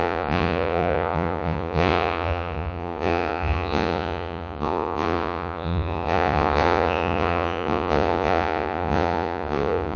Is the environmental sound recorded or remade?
remade